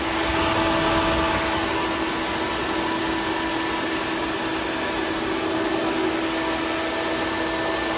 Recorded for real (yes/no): yes